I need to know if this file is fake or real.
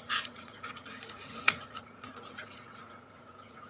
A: fake